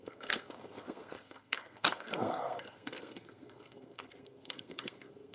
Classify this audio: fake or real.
fake